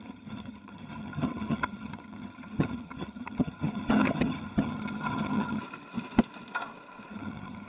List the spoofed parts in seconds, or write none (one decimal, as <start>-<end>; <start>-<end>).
0.0-5.6; 7.1-7.7